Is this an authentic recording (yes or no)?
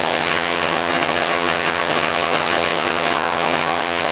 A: no